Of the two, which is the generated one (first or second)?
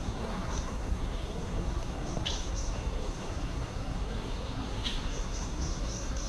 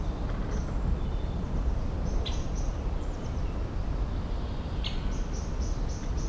first